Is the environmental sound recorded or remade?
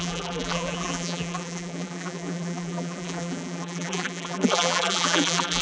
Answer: remade